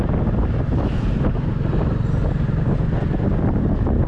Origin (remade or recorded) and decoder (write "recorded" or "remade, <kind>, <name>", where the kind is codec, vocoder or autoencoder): recorded